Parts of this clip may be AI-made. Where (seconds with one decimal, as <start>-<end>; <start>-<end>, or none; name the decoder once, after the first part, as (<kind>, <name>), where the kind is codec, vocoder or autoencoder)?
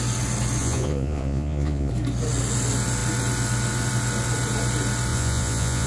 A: 0.6-1.9 (vocoder, Vocos); 5.1-5.9